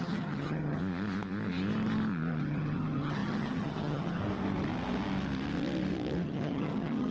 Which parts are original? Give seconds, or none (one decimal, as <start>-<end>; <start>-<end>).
0.8-2.4; 4.2-6.2